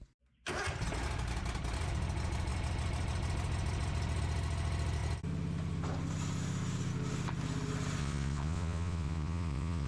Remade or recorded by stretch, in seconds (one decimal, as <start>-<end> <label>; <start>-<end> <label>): 0.0-8.0 recorded; 8.0-9.9 remade